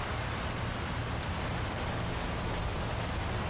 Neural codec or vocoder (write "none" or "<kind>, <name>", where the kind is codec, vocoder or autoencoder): none